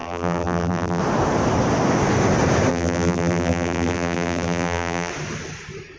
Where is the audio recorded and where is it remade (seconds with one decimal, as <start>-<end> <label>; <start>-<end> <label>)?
0.0-1.0 remade; 1.0-2.7 recorded; 2.7-5.1 remade; 5.1-6.0 recorded